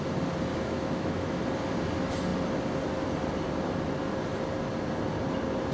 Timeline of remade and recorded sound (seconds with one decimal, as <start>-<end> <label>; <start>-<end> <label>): 0.0-0.5 recorded; 0.5-1.4 remade; 1.4-5.7 recorded